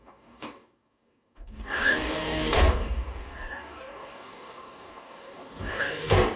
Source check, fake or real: fake